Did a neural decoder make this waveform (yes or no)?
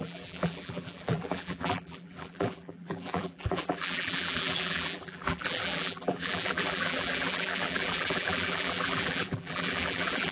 yes